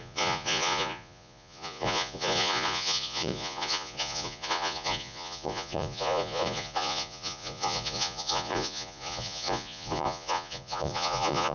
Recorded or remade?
remade